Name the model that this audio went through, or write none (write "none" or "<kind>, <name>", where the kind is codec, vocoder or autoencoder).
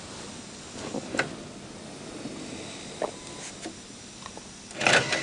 none